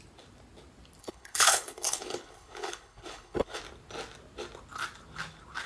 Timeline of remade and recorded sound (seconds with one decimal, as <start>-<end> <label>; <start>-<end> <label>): 0.0-1.0 recorded; 1.0-3.6 remade; 3.6-5.7 recorded

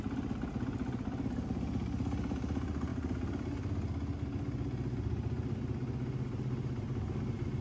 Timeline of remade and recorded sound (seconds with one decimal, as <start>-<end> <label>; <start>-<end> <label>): 0.0-7.6 recorded